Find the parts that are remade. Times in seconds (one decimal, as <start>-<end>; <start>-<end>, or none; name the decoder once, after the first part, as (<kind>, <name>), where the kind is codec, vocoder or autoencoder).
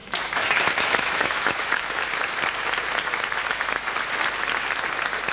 0.0-2.1 (autoencoder, DAC-VAE); 3.4-3.9